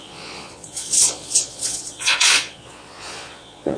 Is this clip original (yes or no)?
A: no